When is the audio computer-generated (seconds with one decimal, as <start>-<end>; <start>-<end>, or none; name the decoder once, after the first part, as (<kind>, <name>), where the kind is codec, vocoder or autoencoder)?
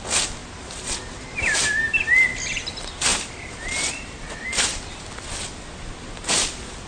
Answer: none